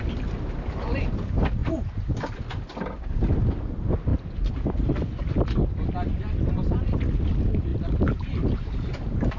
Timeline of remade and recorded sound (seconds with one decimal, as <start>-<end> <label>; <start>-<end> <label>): 0.0-1.6 recorded; 1.6-2.4 remade; 2.4-7.7 recorded; 7.7-8.5 remade; 8.5-9.4 recorded